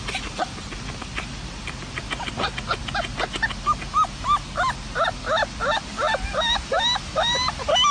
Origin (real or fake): real